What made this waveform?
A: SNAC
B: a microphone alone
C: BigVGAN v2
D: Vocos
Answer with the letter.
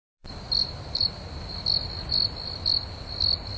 B